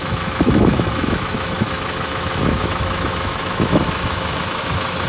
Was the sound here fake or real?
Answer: fake